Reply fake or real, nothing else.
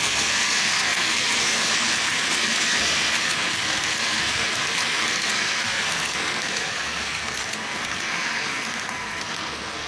fake